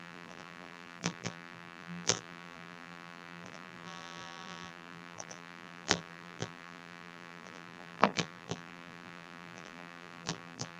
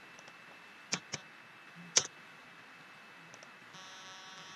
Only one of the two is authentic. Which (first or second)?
second